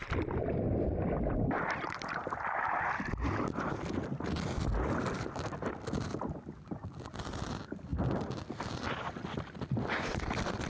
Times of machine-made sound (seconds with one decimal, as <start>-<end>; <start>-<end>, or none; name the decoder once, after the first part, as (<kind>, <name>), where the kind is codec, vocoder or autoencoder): none